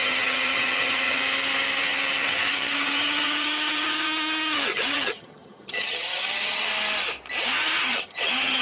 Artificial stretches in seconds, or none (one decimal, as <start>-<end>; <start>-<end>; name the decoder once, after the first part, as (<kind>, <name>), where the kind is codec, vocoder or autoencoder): 0.0-1.2 (vocoder, HiFi-GAN); 1.8-6.7; 7.4-8.6